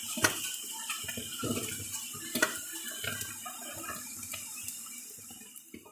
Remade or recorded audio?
recorded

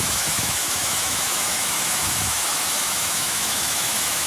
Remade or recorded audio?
remade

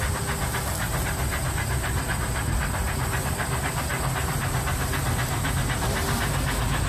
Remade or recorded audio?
recorded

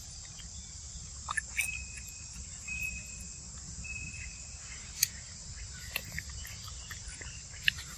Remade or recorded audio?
recorded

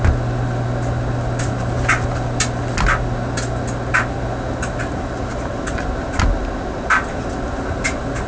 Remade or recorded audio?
recorded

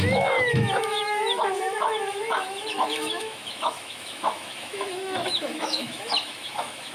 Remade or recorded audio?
remade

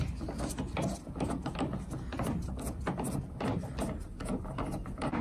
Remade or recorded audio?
recorded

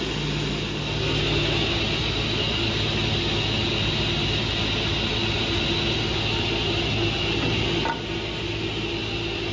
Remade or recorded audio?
recorded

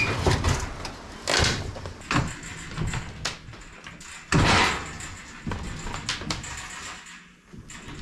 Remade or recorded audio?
recorded